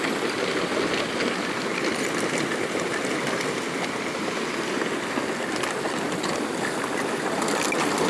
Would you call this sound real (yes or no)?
yes